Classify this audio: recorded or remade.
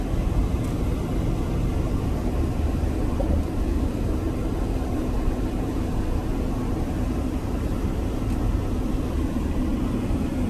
recorded